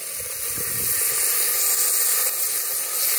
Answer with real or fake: real